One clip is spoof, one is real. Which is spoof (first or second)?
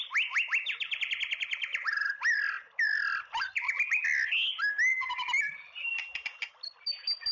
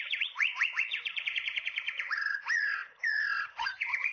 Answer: second